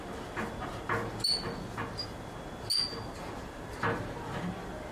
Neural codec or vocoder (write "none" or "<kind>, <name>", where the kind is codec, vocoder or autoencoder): none